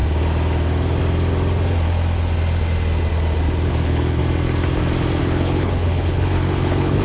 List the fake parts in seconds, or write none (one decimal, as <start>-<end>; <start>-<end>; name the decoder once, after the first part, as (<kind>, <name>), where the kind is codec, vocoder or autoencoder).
3.7-4.2 (codec, HILCodec); 5.2-7.0